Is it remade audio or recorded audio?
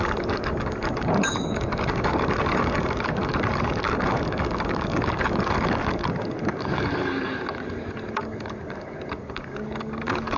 remade